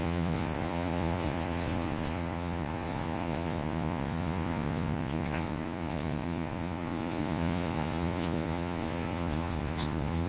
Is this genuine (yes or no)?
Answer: no